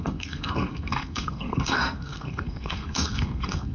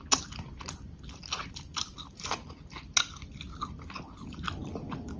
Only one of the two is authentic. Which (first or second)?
second